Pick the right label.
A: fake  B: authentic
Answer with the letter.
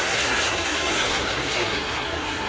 A